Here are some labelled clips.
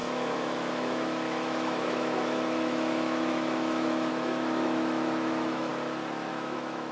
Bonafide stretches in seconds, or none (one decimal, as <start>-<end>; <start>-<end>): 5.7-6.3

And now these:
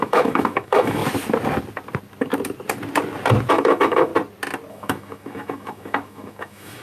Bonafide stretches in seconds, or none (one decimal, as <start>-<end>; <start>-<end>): 1.0-3.5; 4.1-4.7

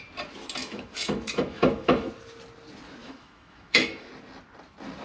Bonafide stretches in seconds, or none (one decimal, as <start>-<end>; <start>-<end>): 0.0-0.6; 2.1-3.0; 4.1-5.0

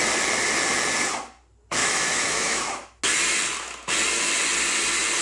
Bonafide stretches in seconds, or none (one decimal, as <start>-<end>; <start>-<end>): 0.0-1.8; 3.0-5.2

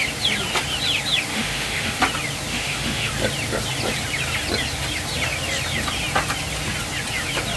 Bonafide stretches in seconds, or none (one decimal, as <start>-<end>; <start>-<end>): 0.0-1.3; 2.0-2.5; 3.1-7.6